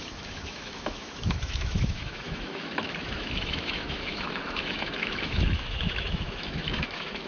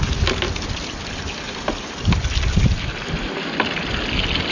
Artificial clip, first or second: first